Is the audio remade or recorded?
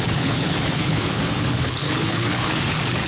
remade